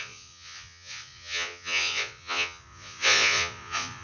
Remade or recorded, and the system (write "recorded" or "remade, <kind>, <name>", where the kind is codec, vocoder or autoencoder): remade, vocoder, Vocos